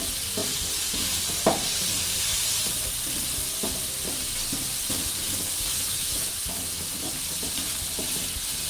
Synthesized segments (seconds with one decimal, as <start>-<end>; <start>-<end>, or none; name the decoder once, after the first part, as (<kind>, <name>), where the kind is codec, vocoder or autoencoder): 5.7-6.9 (autoencoder, DAC-VAE)